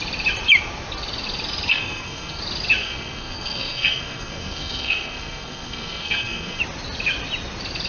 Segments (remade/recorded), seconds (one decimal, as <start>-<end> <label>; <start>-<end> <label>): 0.0-1.7 recorded; 1.7-2.4 remade; 2.4-2.8 recorded; 2.8-6.6 remade; 6.6-7.9 recorded